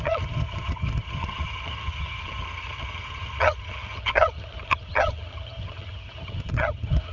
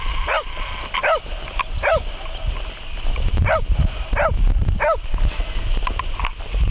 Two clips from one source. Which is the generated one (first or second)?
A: first